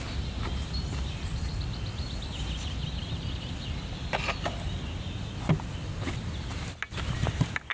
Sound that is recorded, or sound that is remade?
recorded